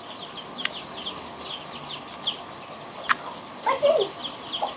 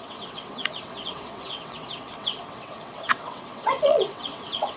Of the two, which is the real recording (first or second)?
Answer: first